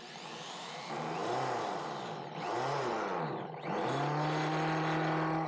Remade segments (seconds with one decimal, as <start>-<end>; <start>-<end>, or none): none